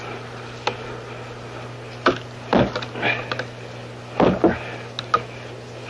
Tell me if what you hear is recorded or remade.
recorded